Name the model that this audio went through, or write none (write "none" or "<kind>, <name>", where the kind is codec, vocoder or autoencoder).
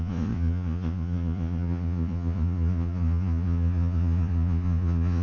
vocoder, Vocos